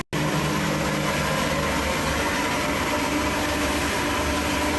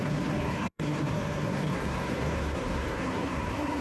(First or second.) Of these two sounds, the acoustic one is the first